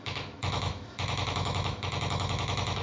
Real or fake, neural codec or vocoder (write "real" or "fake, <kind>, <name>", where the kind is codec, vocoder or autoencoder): fake, autoencoder, DAC-VAE